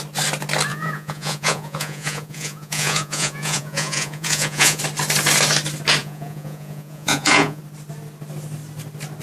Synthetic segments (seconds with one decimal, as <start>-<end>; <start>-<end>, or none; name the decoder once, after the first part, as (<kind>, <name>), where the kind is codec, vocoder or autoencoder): 0.7-4.8 (vocoder, Vocos); 6.0-7.6